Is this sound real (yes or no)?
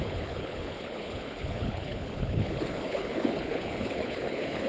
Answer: no